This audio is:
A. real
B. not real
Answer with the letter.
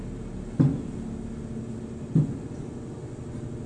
A